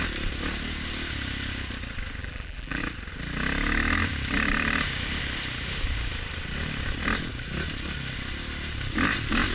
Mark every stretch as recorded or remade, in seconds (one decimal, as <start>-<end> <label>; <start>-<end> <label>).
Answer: 0.0-2.2 recorded; 2.2-2.8 remade; 2.8-9.5 recorded